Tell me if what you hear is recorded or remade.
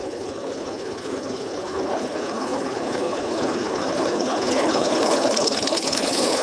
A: remade